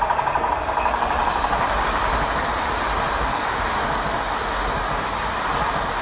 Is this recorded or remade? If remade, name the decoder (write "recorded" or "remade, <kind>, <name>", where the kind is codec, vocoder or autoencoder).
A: recorded